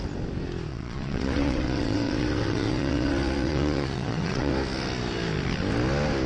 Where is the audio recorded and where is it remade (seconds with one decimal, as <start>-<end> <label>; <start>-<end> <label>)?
0.0-0.7 recorded; 0.7-4.5 remade; 4.5-6.3 recorded